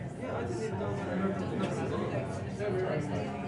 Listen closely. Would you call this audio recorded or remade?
recorded